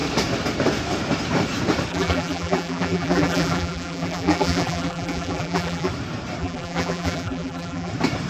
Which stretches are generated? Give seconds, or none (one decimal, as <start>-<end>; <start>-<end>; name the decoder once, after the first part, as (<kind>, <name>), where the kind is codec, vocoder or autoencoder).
1.9-5.9 (vocoder, BigVGAN v2); 6.4-7.9